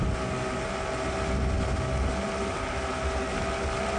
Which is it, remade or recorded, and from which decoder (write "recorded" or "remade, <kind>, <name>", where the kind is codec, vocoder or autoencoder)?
recorded